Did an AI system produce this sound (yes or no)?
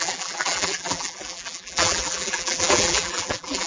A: yes